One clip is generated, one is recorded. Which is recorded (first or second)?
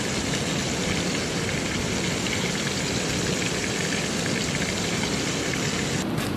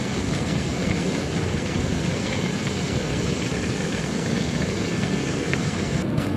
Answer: first